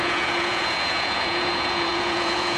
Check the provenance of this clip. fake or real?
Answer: fake